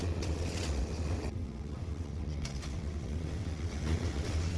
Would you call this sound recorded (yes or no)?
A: no